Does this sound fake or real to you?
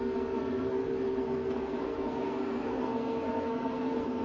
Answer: fake